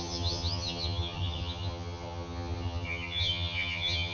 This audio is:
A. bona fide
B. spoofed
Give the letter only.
B